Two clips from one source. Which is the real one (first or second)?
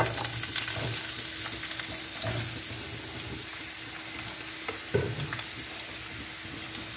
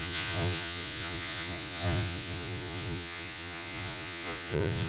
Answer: first